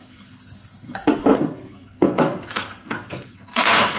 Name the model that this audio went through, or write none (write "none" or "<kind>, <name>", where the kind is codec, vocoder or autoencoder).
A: codec, SNAC